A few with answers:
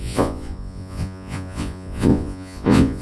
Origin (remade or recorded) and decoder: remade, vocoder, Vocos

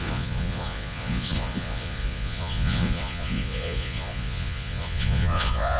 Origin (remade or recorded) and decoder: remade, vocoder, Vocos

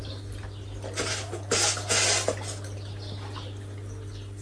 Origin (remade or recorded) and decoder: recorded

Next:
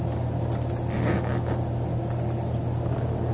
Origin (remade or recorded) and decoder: recorded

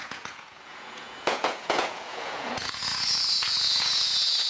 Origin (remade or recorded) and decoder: remade, vocoder, Vocos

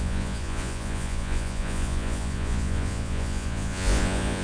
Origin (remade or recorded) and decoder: remade, vocoder, Vocos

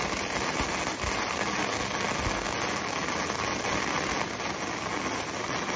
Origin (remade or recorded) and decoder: recorded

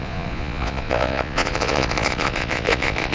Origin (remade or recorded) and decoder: remade, vocoder, Vocos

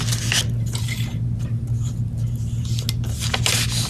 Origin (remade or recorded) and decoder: recorded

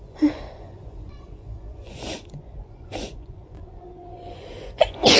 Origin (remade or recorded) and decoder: remade, vocoder, Vocos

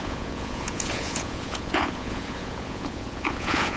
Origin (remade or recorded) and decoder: remade, vocoder, Vocos